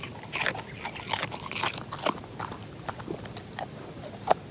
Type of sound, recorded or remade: recorded